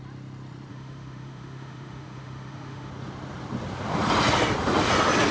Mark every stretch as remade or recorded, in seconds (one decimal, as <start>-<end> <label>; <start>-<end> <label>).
0.0-0.7 recorded; 0.7-2.9 remade; 2.9-5.3 recorded

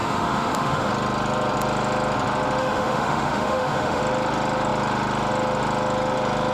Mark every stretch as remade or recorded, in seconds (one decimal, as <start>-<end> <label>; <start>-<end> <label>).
0.0-0.9 remade; 0.9-2.6 recorded; 2.6-4.0 remade; 4.0-6.5 recorded

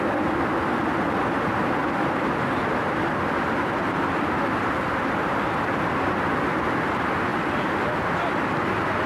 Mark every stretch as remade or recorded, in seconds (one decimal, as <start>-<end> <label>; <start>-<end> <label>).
0.0-9.1 recorded

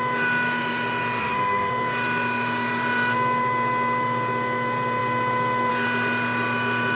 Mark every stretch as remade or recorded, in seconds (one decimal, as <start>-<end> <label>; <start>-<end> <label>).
0.0-1.2 recorded; 1.2-1.7 remade; 1.7-6.9 recorded